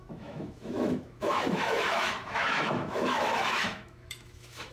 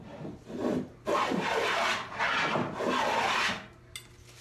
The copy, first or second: first